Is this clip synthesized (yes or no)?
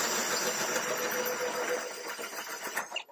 no